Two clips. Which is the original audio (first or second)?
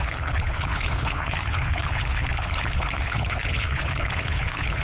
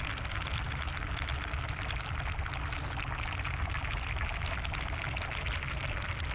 second